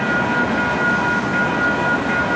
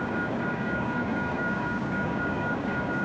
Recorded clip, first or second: first